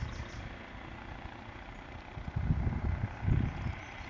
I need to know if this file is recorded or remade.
recorded